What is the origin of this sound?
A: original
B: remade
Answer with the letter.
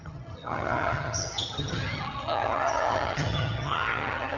B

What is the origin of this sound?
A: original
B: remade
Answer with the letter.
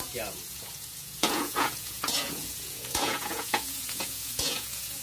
B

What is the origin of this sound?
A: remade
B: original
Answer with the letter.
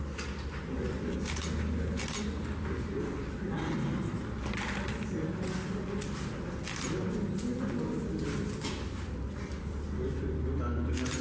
B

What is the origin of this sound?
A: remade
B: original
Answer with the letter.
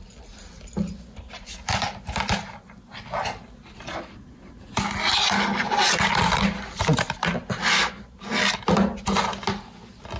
B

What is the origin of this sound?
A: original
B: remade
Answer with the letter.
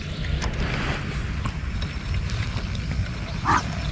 A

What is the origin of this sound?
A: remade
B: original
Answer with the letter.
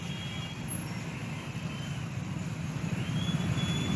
B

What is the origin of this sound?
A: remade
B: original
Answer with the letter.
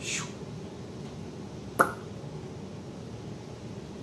B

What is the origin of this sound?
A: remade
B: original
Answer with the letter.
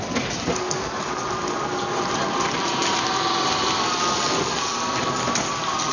B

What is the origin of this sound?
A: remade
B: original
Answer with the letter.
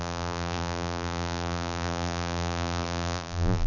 A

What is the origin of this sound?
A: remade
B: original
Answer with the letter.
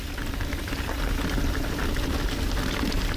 B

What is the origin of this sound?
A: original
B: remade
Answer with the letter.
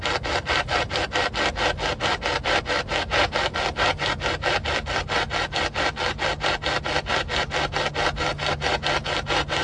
A